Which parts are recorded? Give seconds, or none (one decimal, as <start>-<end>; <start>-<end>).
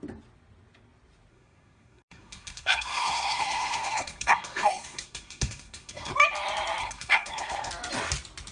0.0-1.3; 6.1-6.8; 7.7-8.5